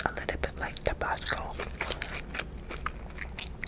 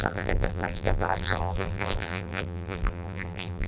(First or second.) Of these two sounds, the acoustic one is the first